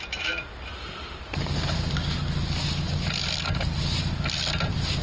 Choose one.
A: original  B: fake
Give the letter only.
A